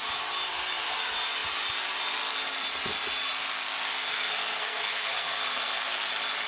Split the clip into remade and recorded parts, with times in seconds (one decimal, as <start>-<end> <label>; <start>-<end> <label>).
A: 0.0-4.1 recorded; 4.1-6.1 remade; 6.1-6.5 recorded